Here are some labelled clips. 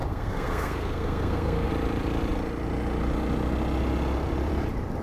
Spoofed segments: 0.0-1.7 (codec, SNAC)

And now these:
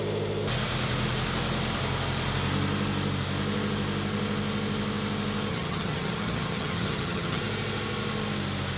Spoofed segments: 5.5-7.4 (vocoder, HiFi-GAN)

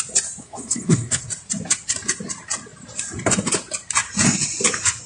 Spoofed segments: 0.4-1.3 (codec, SNAC)